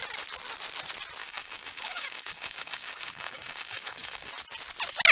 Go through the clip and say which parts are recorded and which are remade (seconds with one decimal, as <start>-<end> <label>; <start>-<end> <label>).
0.0-1.2 recorded; 1.2-4.3 remade; 4.3-5.1 recorded